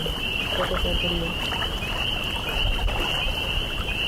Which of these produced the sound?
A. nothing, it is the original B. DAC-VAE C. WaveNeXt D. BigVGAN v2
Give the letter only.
A